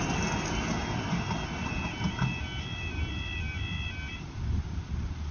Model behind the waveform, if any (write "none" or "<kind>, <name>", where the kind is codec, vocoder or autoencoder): none